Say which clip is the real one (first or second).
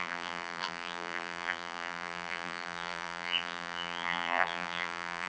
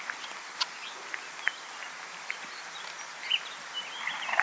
second